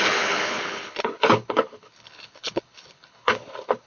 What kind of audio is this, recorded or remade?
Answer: remade